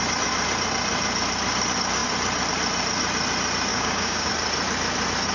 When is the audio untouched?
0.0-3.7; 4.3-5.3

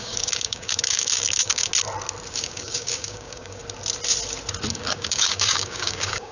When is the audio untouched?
1.7-2.3; 3.6-4.7